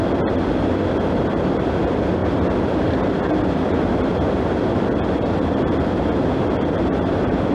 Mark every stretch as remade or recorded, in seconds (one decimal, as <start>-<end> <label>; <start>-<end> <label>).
0.0-2.2 remade; 2.2-5.3 recorded; 5.3-7.5 remade